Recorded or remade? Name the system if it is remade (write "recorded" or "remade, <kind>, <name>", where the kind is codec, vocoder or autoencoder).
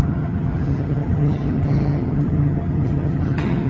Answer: remade, vocoder, HiFi-GAN